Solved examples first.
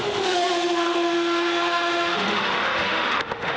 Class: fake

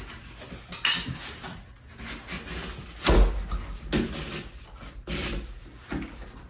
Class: real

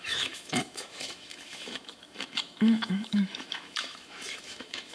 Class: fake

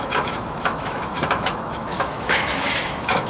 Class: fake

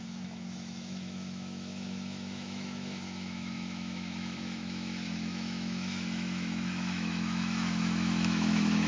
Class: fake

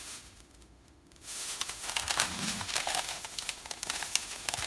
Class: fake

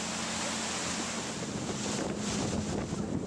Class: real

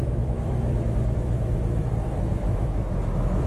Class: fake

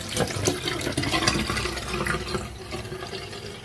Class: real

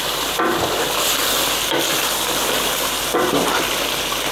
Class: real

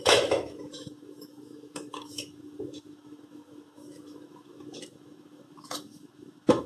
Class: fake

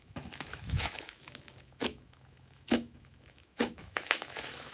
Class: fake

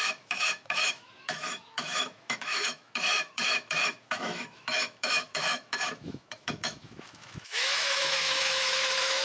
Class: fake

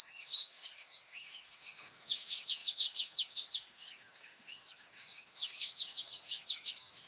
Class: fake